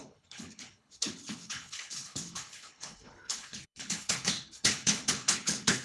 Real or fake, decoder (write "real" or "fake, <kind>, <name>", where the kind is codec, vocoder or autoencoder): fake, codec, HILCodec